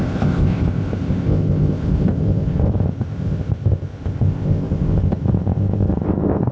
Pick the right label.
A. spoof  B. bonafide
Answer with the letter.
A